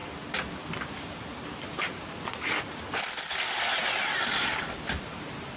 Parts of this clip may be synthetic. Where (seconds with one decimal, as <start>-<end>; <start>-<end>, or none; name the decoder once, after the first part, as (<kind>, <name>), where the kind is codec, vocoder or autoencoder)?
none